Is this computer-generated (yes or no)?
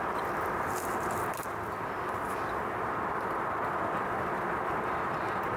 no